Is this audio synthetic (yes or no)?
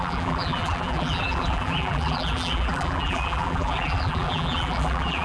yes